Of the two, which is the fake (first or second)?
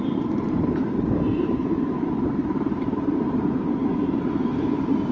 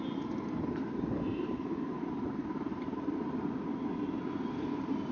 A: first